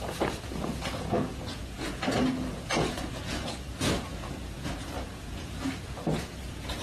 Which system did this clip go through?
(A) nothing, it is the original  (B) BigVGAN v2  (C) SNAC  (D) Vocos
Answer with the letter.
D